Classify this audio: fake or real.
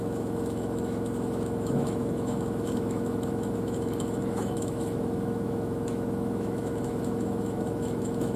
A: fake